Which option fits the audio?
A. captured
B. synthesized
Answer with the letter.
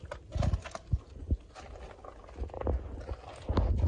A